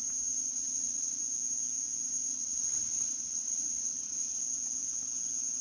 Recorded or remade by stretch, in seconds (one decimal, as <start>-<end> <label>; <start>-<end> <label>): 0.0-0.5 recorded; 0.5-1.2 remade; 1.2-2.3 recorded; 2.3-4.4 remade; 4.4-5.6 recorded